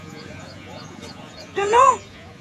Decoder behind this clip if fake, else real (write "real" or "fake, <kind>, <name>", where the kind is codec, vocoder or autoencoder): fake, vocoder, Vocos